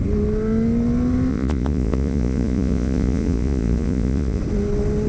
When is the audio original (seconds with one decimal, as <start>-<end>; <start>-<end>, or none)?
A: 0.0-1.3; 4.4-5.1